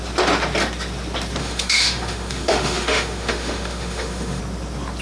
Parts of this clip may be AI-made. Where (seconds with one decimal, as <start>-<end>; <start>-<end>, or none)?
1.4-4.4